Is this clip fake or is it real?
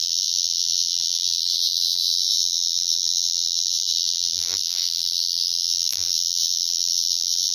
fake